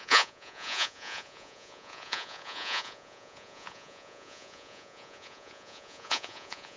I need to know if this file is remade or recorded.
remade